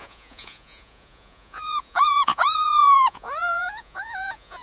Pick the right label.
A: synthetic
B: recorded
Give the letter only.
A